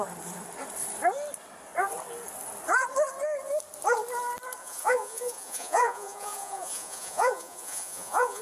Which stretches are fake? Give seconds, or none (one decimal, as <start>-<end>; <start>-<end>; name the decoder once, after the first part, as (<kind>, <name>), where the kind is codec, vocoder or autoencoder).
4.6-8.4 (vocoder, Vocos)